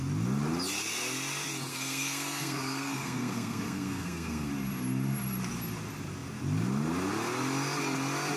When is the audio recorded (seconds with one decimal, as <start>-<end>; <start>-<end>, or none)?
0.0-1.7; 4.5-8.4